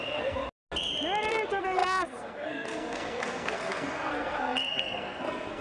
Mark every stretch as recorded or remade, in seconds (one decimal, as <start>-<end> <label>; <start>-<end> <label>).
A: 0.0-0.4 remade; 0.4-1.3 recorded; 1.3-5.6 remade

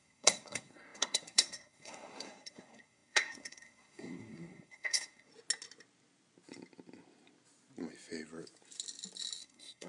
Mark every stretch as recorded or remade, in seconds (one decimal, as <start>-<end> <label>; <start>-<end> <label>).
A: 0.0-5.3 remade; 5.3-9.4 recorded; 9.4-9.9 remade

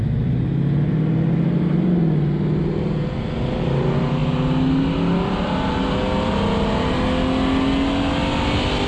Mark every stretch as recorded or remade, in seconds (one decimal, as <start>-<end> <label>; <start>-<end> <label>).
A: 0.0-8.9 recorded

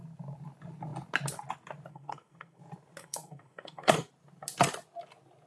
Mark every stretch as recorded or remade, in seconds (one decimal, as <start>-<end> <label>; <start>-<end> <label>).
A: 0.0-1.9 recorded; 1.9-2.6 remade; 2.6-3.0 recorded; 3.0-4.1 remade; 4.1-5.5 recorded

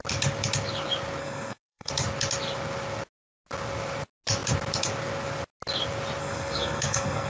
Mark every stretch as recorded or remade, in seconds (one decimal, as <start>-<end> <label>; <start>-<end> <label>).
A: 0.0-1.2 recorded; 1.2-1.9 remade; 1.9-6.2 recorded; 6.2-7.3 remade

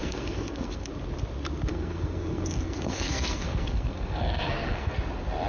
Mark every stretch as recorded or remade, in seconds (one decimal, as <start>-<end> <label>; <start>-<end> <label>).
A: 0.0-0.9 remade; 0.9-1.7 recorded; 1.7-4.9 remade; 4.9-5.5 recorded

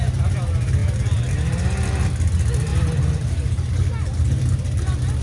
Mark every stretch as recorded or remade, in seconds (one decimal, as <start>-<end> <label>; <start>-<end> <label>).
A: 0.0-5.2 recorded